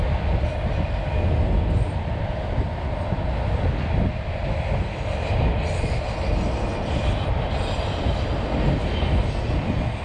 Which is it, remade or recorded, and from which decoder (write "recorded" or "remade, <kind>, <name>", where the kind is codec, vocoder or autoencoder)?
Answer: recorded